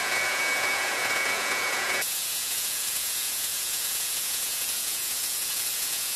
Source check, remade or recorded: remade